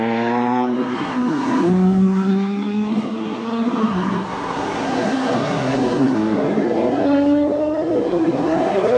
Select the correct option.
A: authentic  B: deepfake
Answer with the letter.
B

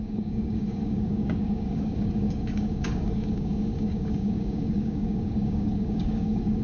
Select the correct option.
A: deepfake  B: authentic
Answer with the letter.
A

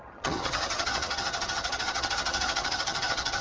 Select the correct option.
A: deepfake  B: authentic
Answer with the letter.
A